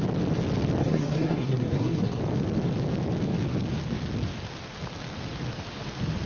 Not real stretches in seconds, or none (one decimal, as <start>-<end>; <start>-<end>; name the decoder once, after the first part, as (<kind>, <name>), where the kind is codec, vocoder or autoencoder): 0.8-2.2 (codec, SNAC)